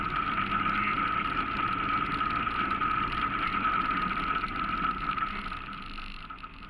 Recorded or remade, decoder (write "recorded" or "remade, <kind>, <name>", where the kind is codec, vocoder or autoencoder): recorded